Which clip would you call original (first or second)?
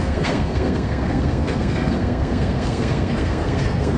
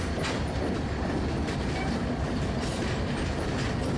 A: second